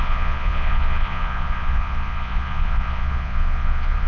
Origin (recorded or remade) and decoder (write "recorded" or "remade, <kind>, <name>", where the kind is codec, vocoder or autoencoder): remade, vocoder, Vocos